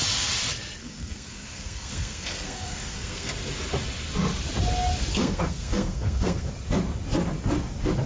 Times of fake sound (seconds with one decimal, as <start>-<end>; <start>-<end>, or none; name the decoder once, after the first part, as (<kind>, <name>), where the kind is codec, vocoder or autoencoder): 0.8-3.3 (codec, SNAC); 5.1-6.5

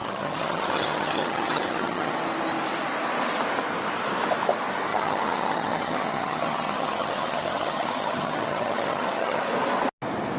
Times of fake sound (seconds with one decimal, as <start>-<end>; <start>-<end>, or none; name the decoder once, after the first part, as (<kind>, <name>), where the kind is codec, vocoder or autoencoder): 0.0-2.1 (vocoder, HiFi-GAN); 4.9-9.4

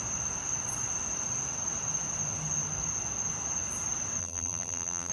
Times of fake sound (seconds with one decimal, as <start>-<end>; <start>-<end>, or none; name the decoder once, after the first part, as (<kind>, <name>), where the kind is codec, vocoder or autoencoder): 4.2-5.1 (vocoder, BigVGAN v2)

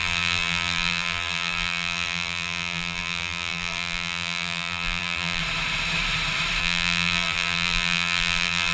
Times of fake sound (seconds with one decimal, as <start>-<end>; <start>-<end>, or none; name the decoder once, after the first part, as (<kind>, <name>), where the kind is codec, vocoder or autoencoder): 0.0-5.4 (vocoder, BigVGAN v2); 6.6-8.7